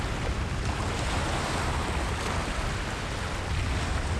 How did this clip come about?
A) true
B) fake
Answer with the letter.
A